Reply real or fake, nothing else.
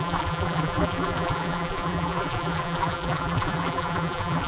fake